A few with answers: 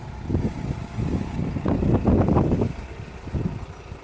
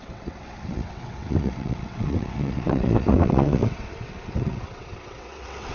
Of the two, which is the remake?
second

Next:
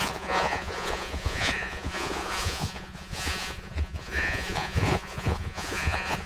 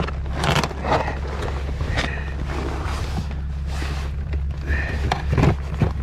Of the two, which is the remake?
first